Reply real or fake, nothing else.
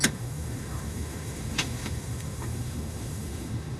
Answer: fake